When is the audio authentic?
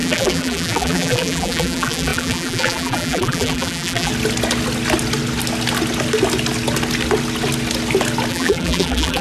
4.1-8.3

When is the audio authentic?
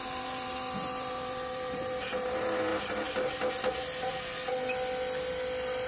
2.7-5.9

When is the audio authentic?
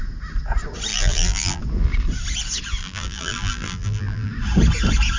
0.0-0.9; 1.6-2.8; 4.3-5.2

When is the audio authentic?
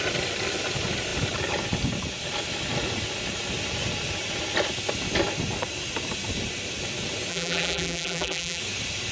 0.0-7.3; 8.6-9.1